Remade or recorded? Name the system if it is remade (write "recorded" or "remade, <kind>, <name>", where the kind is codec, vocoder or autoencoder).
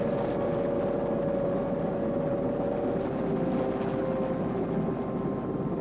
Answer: recorded